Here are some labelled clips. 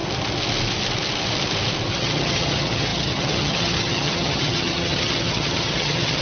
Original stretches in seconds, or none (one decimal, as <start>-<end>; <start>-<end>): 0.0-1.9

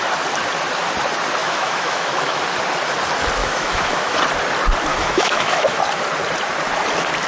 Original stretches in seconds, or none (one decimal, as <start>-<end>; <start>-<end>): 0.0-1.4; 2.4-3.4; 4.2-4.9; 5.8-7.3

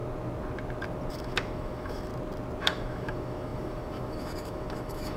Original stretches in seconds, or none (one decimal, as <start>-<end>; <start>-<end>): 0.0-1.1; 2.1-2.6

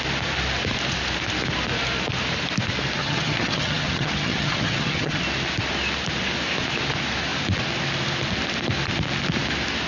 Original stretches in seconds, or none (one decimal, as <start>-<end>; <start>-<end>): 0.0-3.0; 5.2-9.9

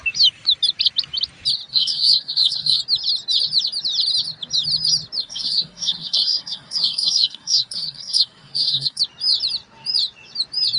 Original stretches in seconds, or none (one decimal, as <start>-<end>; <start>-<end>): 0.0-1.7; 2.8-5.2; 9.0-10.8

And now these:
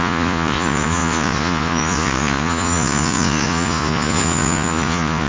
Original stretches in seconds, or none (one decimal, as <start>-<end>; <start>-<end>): none